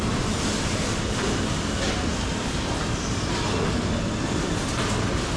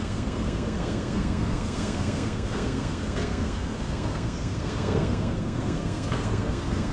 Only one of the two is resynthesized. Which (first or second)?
second